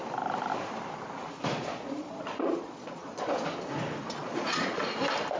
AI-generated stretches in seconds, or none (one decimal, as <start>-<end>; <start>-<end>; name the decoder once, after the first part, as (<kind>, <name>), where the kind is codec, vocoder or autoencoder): 1.5-3.3 (vocoder, Vocos); 4.2-4.8